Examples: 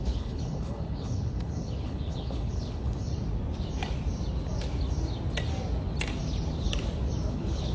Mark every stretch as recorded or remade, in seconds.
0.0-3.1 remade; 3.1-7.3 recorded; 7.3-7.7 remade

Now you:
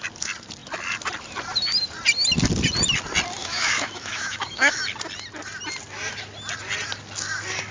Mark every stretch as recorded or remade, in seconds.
0.0-3.4 recorded; 3.4-4.8 remade; 4.8-7.7 recorded

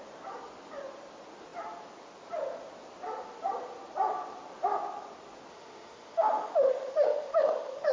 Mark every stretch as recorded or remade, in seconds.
0.0-5.5 recorded; 5.5-7.9 remade

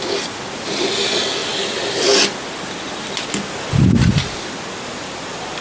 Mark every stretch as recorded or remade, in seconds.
0.0-5.6 recorded

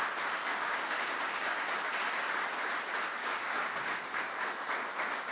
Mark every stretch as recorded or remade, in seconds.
0.0-0.5 recorded; 0.5-1.6 remade; 1.6-3.2 recorded; 3.2-4.2 remade; 4.2-5.3 recorded

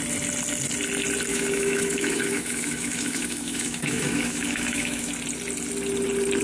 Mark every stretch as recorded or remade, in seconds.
0.0-1.3 recorded; 1.3-5.1 remade; 5.1-6.4 recorded

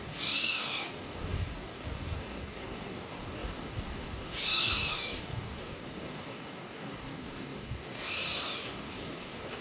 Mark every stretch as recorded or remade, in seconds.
0.0-9.6 remade